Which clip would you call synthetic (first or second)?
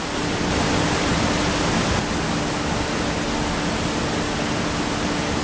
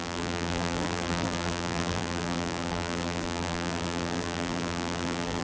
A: second